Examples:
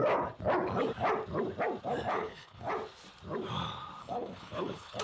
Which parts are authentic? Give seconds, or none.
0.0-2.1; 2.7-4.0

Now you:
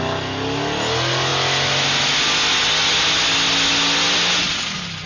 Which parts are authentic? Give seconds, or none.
0.0-5.1

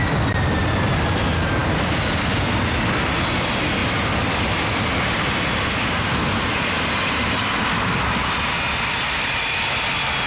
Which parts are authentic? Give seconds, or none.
0.0-10.3

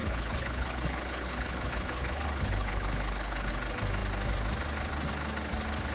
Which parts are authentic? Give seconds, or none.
3.5-5.9

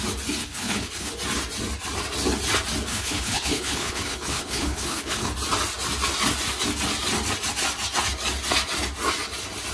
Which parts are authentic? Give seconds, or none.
0.0-0.4; 1.1-2.9; 5.3-9.7

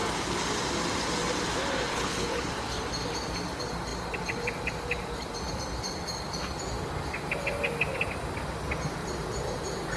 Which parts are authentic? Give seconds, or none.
0.0-1.9; 2.5-10.0